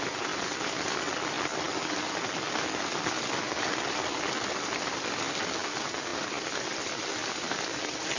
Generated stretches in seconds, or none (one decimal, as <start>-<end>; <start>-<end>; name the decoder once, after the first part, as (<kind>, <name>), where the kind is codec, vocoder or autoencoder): none